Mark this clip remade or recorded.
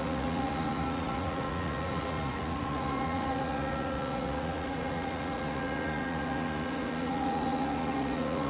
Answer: remade